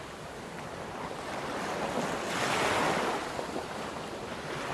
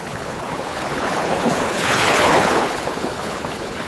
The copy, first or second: second